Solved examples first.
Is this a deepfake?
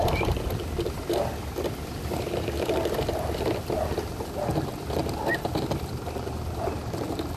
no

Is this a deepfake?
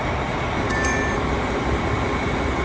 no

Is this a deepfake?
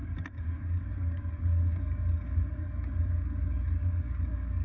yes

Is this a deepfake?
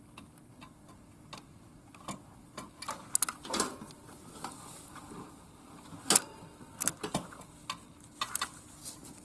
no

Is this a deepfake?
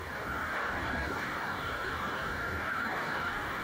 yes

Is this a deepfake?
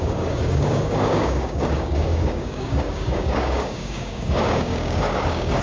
yes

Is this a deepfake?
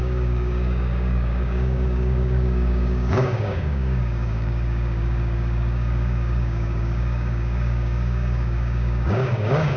yes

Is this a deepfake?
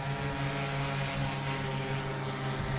no